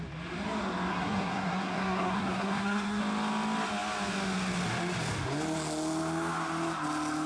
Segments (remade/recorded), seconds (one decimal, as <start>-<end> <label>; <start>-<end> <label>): 0.0-0.9 recorded; 0.9-3.0 remade; 3.0-7.3 recorded